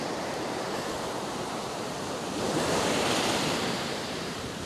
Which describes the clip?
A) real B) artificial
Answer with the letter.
B